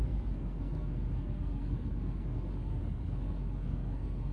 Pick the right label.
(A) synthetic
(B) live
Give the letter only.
A